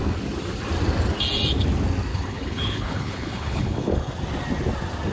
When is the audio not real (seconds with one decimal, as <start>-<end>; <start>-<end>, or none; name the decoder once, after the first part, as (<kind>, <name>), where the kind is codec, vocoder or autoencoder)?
2.1-4.1 (codec, HILCodec)